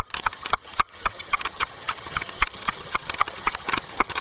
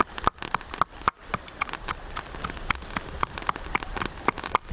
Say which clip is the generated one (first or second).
first